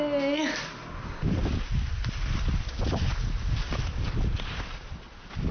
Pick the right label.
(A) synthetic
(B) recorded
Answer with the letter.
B